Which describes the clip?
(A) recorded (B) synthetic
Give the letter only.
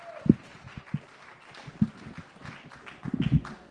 A